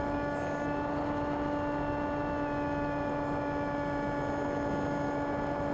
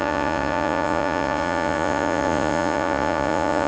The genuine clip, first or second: first